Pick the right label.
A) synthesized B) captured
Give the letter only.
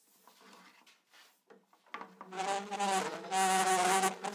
B